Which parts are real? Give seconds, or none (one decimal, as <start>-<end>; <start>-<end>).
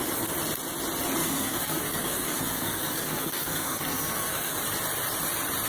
0.0-1.2; 4.6-5.7